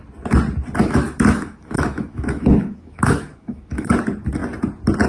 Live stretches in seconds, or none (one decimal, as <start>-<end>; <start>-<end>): 0.0-0.8; 3.9-5.1